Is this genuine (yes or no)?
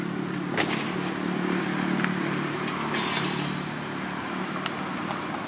yes